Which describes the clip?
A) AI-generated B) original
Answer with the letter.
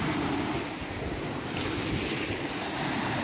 B